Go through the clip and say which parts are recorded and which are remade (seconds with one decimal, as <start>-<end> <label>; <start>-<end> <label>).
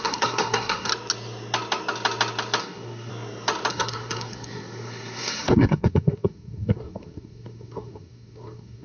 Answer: 0.0-0.9 remade; 0.9-2.6 recorded; 2.6-3.1 remade; 3.1-3.7 recorded; 3.7-8.8 remade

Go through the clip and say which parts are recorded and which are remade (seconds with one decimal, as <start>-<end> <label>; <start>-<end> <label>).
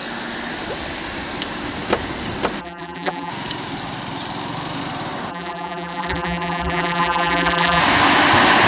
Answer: 0.0-2.6 recorded; 2.6-3.3 remade; 3.3-5.3 recorded; 5.3-7.8 remade; 7.8-8.7 recorded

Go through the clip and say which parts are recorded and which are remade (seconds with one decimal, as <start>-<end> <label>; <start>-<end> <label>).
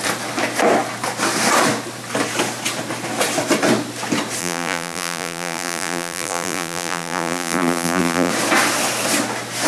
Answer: 0.0-4.4 recorded; 4.4-8.3 remade; 8.3-9.7 recorded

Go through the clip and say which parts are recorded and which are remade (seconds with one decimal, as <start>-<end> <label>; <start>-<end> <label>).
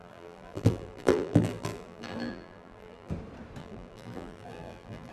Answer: 0.0-3.1 remade; 3.1-3.6 recorded; 3.6-5.1 remade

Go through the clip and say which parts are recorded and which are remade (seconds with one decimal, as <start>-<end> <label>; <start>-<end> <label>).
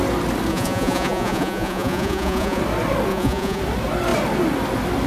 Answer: 0.0-0.5 recorded; 0.5-2.6 remade; 2.6-3.1 recorded; 3.1-3.6 remade; 3.6-5.1 recorded